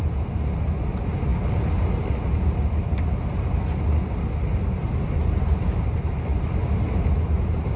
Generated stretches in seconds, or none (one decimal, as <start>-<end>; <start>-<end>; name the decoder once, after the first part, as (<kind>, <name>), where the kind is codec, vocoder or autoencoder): none